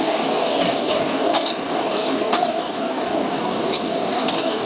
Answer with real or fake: fake